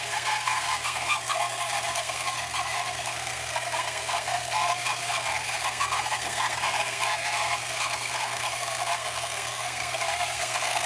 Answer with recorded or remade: remade